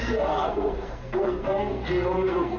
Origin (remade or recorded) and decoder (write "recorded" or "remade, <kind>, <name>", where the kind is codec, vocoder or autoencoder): remade, codec, SNAC